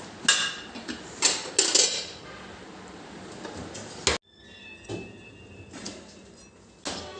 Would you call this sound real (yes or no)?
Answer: yes